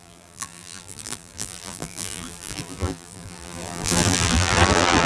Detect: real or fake fake